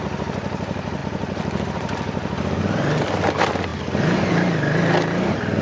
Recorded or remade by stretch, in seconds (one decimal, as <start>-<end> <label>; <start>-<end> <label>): 0.0-1.0 recorded; 1.0-2.6 remade; 2.6-5.6 recorded